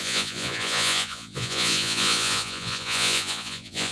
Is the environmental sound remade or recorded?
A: remade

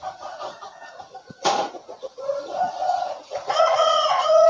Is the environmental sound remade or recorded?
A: remade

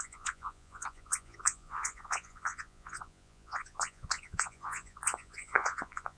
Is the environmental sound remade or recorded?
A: remade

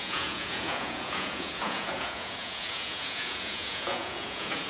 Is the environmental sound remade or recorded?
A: remade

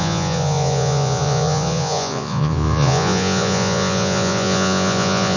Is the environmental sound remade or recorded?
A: remade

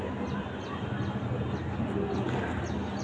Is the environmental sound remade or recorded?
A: recorded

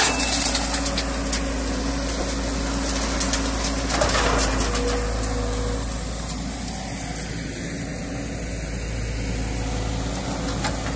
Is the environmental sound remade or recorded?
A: recorded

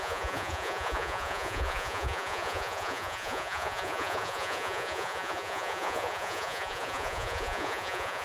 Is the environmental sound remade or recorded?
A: remade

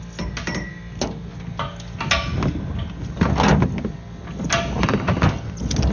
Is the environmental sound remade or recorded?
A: recorded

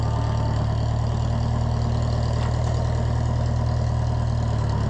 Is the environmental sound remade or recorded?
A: recorded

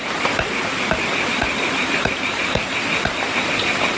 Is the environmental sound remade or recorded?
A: recorded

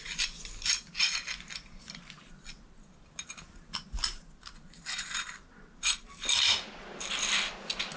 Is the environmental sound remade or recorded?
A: recorded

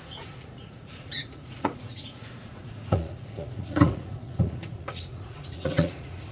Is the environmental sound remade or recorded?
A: remade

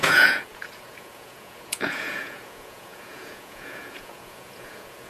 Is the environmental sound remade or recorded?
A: remade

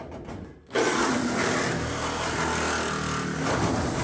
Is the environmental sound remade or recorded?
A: recorded